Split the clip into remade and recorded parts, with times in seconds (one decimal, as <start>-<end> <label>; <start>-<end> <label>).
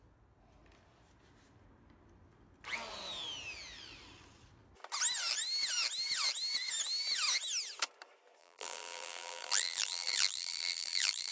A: 0.0-8.4 recorded; 8.4-11.3 remade